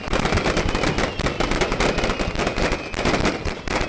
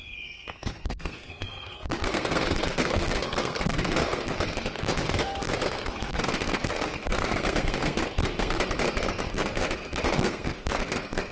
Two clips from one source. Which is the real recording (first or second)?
first